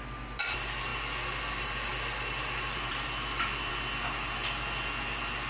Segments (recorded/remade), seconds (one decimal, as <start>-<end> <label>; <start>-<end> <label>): 0.0-5.5 recorded